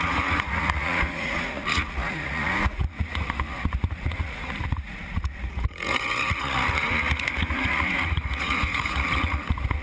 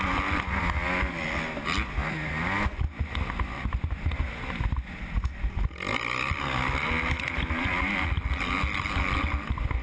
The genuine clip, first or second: second